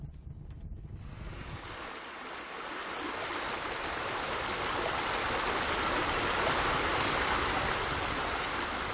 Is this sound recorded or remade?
recorded